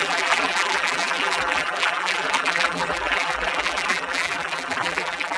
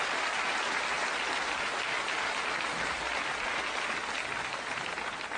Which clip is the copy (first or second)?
first